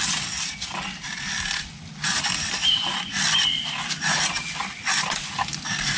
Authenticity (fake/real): real